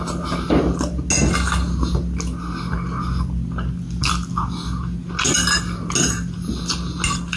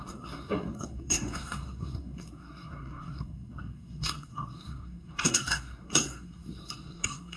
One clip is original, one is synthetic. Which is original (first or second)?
first